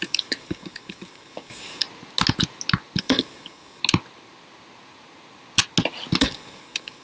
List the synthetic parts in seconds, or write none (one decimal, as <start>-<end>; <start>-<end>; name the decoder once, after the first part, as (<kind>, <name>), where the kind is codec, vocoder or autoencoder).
0.0-1.8 (codec, DAC); 3.0-3.8; 6.2-7.0